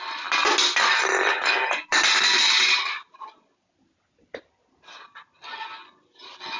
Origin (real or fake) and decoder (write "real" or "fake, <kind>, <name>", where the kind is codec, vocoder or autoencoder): real